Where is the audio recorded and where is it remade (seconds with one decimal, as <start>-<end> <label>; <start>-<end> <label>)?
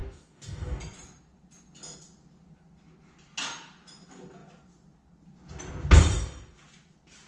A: 0.0-0.8 remade; 0.8-7.3 recorded